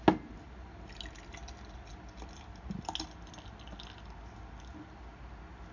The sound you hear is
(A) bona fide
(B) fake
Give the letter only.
A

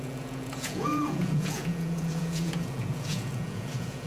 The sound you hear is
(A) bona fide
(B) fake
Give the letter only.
B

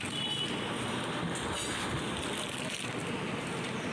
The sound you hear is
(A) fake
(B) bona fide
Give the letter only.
B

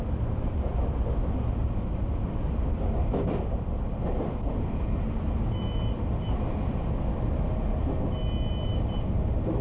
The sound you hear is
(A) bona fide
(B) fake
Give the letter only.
A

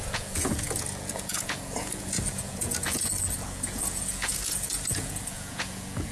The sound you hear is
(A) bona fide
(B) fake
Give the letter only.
B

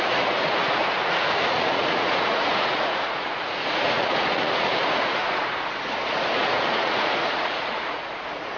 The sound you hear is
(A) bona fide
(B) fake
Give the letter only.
B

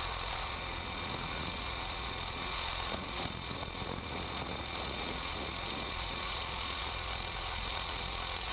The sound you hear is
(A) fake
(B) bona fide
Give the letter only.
A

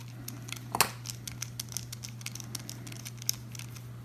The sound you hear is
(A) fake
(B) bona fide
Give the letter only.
B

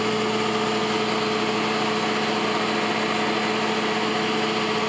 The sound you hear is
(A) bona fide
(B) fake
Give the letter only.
A